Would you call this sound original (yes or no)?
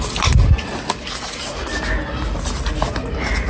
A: yes